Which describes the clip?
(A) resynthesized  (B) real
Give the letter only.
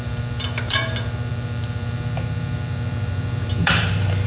A